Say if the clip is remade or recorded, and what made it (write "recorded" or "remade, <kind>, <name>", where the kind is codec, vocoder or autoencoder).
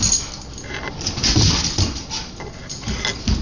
recorded